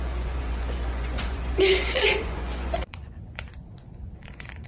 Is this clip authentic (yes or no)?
no